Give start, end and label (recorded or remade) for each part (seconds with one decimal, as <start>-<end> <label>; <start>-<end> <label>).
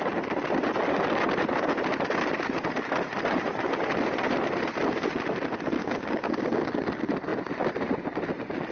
0.0-5.8 recorded; 5.8-6.6 remade; 6.6-8.7 recorded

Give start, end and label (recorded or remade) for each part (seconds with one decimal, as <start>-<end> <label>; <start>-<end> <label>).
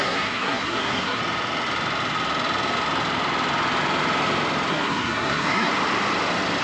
0.0-1.2 remade; 1.2-4.7 recorded; 4.7-5.7 remade; 5.7-6.6 recorded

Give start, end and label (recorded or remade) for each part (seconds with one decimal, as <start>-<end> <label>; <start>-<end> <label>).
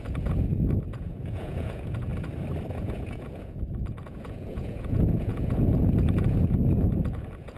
0.0-2.1 remade; 2.1-2.7 recorded; 2.7-7.6 remade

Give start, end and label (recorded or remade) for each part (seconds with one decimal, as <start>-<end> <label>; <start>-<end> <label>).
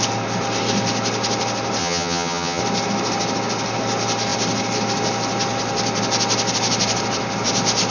0.0-1.8 recorded; 1.8-2.6 remade; 2.6-7.9 recorded